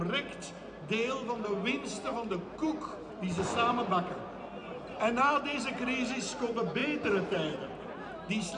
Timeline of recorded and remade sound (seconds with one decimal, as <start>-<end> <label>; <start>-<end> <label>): 0.0-8.6 recorded